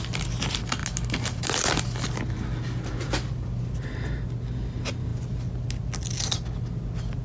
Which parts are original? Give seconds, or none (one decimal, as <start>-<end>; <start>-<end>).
0.0-7.2